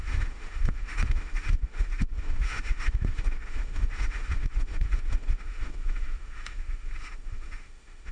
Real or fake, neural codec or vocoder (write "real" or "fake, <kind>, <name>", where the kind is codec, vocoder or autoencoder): fake, autoencoder, DAC-VAE